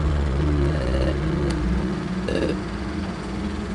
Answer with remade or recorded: remade